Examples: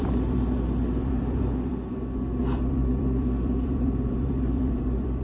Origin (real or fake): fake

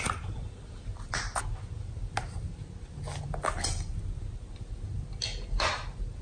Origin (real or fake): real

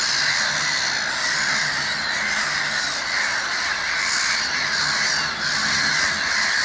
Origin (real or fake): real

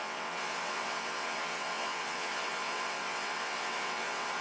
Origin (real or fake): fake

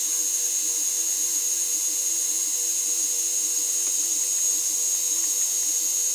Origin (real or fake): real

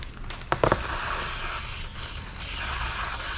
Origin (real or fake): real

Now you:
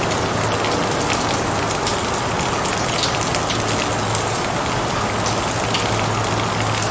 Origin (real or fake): real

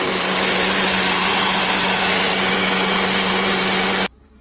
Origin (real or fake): real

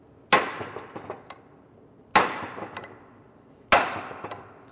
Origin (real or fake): real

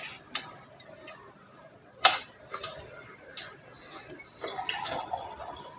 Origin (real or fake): real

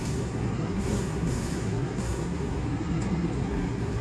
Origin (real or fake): fake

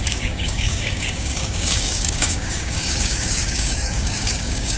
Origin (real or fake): fake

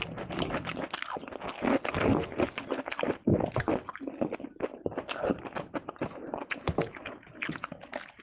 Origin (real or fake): real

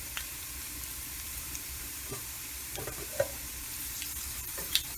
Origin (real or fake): fake